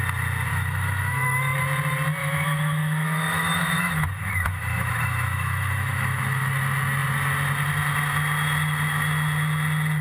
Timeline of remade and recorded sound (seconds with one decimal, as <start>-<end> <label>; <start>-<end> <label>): 0.0-0.5 recorded; 0.5-1.6 remade; 1.6-2.2 recorded; 2.2-6.5 remade; 6.5-10.0 recorded